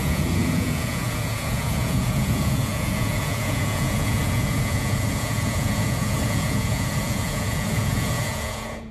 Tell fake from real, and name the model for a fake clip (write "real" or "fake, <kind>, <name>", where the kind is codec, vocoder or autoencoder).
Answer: fake, vocoder, Vocos